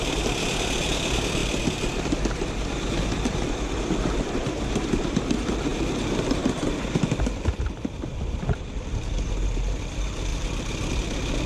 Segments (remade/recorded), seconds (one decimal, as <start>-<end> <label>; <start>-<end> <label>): 0.0-10.3 recorded; 10.3-11.0 remade; 11.0-11.5 recorded